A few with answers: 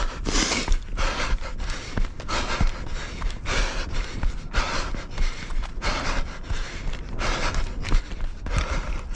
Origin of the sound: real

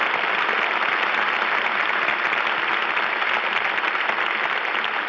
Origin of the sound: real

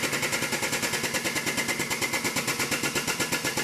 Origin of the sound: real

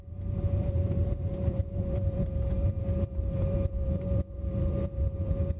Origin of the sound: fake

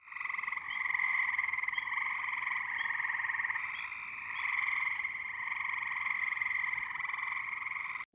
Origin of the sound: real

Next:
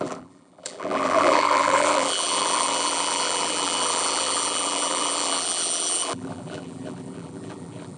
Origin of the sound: fake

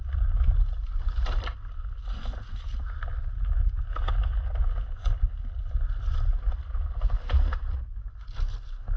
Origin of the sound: real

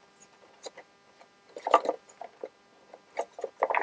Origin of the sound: real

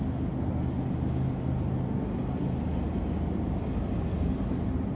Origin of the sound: real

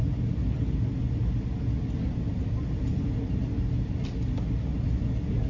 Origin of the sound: real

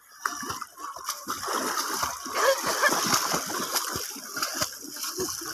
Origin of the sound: real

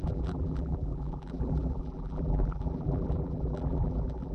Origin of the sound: fake